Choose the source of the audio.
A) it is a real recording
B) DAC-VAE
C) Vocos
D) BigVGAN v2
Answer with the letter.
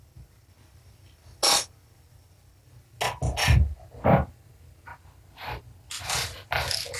A